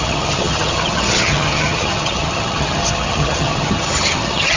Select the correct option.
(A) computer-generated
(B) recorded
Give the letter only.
A